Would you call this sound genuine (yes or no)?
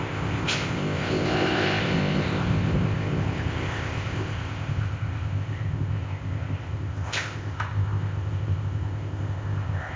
no